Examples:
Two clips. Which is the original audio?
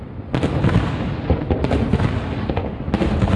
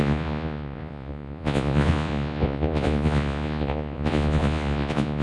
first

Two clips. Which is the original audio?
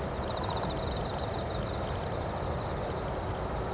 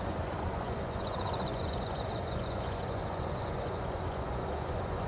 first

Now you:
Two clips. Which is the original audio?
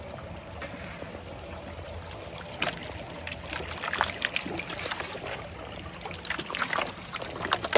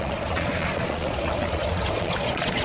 first